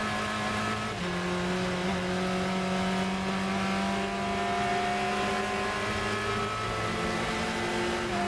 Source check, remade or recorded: recorded